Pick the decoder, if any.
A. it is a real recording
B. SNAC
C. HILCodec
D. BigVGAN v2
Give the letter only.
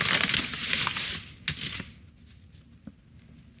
A